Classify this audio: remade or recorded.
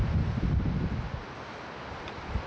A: recorded